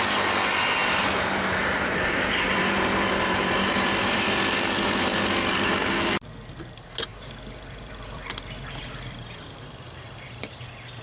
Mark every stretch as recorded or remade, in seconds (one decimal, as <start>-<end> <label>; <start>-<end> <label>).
0.0-0.8 recorded; 0.8-4.7 remade; 4.7-7.1 recorded; 7.1-10.5 remade; 10.5-11.0 recorded